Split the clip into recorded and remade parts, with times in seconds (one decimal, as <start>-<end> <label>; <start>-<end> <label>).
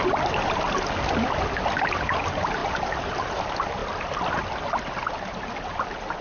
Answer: 0.0-2.6 recorded; 2.6-3.1 remade; 3.1-3.8 recorded; 3.8-5.3 remade; 5.3-6.2 recorded